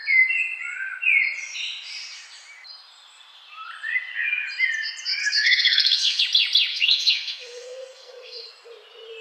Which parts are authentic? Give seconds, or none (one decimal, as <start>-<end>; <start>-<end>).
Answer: 0.0-5.2; 6.2-6.7; 8.5-9.2